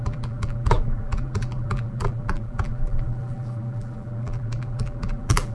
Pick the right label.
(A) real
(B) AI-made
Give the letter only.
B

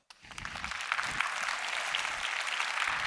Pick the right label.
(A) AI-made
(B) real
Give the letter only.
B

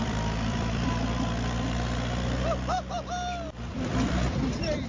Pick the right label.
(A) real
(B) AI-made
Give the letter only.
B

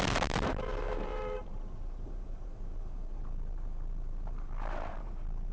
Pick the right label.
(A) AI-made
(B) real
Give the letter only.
A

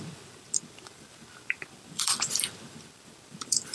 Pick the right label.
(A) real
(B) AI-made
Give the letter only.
B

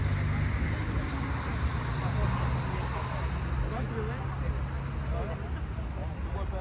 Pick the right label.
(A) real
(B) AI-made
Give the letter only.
A